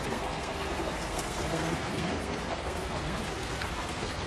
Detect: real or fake fake